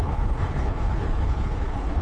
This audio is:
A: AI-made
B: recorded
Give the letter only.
A